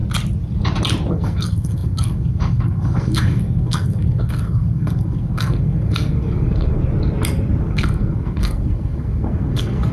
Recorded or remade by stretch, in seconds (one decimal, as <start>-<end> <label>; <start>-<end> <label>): 0.0-1.1 recorded; 1.1-6.8 remade; 6.8-7.6 recorded; 7.6-9.9 remade

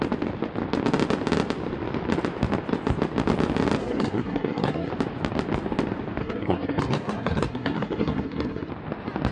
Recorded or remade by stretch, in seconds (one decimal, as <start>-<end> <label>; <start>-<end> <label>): 0.0-3.8 recorded; 3.8-4.9 remade; 4.9-6.2 recorded; 6.2-8.7 remade; 8.7-9.3 recorded

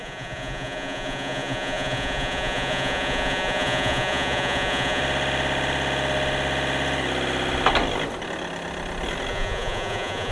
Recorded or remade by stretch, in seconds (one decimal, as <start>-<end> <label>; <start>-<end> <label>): 0.0-5.0 remade; 5.0-9.3 recorded; 9.3-10.3 remade

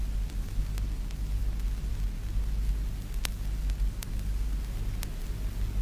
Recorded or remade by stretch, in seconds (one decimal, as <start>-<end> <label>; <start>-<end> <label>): 0.0-5.8 recorded